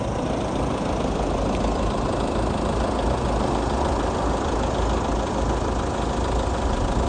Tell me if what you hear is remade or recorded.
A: recorded